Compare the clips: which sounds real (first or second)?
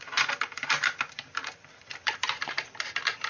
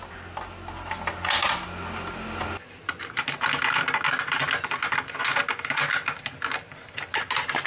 second